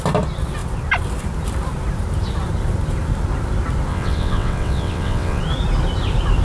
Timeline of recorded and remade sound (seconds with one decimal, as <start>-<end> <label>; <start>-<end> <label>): 0.0-3.9 recorded; 3.9-5.4 remade; 5.4-6.4 recorded